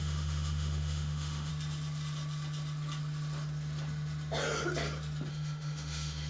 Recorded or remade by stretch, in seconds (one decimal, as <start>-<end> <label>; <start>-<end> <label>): 0.0-1.5 remade; 1.5-5.3 recorded; 5.3-6.3 remade